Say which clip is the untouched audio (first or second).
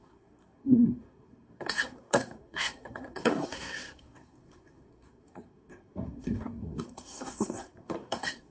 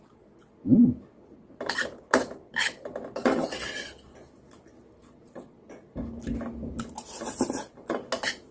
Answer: second